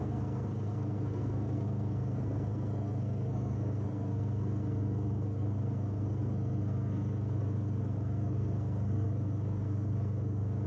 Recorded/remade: remade